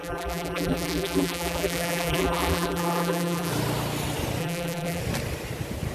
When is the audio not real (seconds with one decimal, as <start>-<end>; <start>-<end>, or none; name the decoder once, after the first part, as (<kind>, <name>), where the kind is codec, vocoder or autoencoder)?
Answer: 0.0-3.5 (vocoder, BigVGAN v2); 4.4-5.0